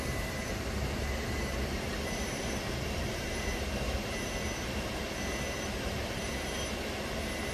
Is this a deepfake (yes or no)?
yes